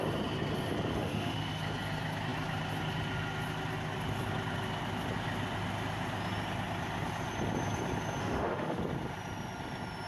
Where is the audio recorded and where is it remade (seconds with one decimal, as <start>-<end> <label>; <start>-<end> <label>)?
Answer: 0.0-0.9 recorded; 0.9-1.6 remade; 1.6-8.2 recorded; 8.2-8.8 remade; 8.8-10.1 recorded